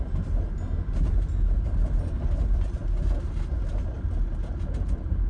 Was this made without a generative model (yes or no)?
yes